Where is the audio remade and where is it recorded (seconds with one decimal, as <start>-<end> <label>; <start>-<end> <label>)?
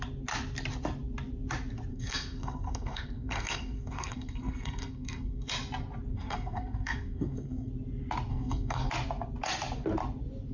0.0-1.9 recorded; 1.9-5.5 remade; 5.5-6.1 recorded; 6.1-7.7 remade; 7.7-8.3 recorded; 8.3-8.9 remade; 8.9-10.5 recorded